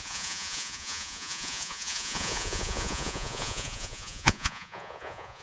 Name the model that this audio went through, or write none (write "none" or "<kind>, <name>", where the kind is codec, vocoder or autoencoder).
vocoder, Vocos